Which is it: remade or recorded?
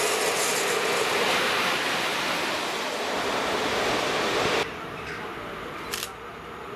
recorded